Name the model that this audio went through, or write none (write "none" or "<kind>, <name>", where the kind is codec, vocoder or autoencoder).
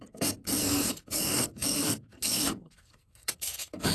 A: codec, SNAC